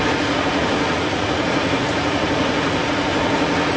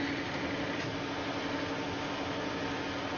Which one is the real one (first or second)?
second